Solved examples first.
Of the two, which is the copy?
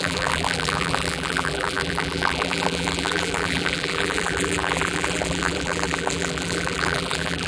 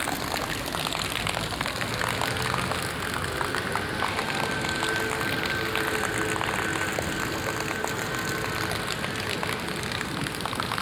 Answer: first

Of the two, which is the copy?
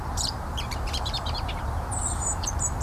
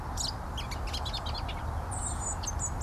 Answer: first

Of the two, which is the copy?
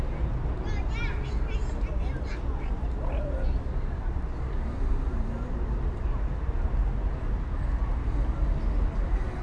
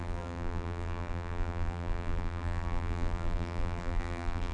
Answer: second